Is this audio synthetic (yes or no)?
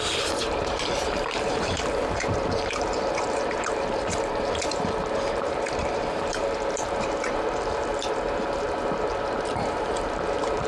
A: yes